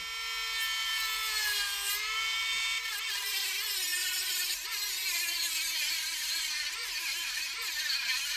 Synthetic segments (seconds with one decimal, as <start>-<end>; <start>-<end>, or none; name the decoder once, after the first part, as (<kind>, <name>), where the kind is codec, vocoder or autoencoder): 0.8-3.5 (vocoder, BigVGAN v2); 3.9-7.4